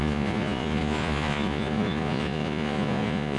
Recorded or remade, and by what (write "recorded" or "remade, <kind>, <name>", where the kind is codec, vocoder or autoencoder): remade, vocoder, Vocos